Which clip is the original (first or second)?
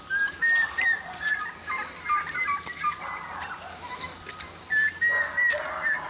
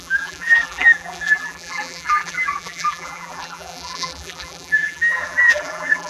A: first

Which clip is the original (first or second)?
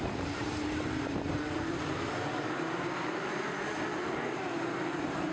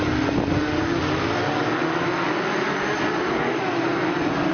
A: second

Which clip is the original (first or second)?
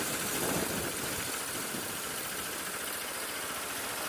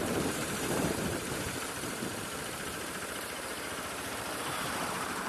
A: first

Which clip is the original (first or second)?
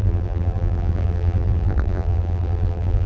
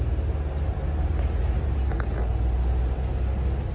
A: second